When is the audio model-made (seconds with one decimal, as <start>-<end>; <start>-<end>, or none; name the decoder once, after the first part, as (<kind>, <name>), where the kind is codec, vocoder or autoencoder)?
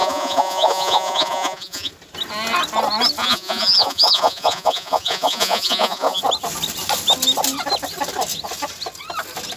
0.0-1.9 (vocoder, Vocos); 3.2-6.2